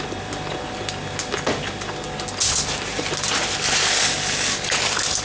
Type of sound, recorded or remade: recorded